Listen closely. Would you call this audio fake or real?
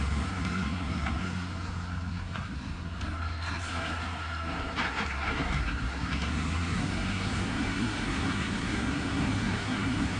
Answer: fake